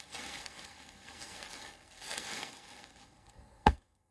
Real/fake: fake